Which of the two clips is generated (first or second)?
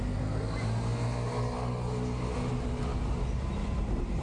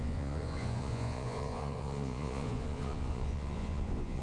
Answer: second